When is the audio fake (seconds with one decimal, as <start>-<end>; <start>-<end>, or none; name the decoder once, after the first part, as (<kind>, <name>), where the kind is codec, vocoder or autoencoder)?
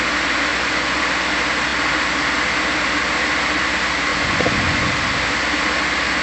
0.5-1.0 (vocoder, Vocos); 4.1-4.9